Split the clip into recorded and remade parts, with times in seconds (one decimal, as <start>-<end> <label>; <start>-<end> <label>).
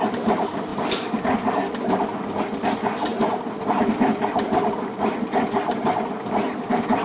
0.0-7.0 recorded